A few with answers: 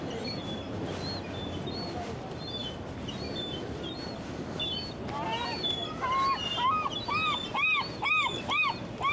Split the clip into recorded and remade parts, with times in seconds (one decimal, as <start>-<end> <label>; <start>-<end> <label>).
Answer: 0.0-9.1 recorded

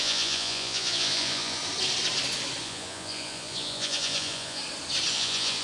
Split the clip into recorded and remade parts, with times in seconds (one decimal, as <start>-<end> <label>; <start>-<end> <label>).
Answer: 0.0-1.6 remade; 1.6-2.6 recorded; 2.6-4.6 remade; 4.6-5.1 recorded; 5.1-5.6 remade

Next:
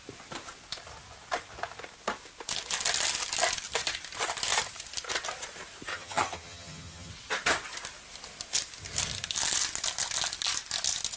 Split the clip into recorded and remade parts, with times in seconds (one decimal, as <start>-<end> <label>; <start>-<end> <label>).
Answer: 0.0-5.9 recorded; 5.9-7.1 remade; 7.1-11.2 recorded

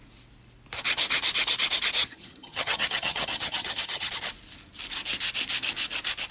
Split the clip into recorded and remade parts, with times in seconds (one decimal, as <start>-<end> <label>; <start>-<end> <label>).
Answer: 0.0-2.0 recorded; 2.0-4.1 remade; 4.1-6.3 recorded

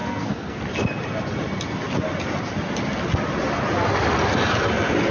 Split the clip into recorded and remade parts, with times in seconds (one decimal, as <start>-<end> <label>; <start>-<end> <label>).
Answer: 0.0-0.6 remade; 0.6-5.1 recorded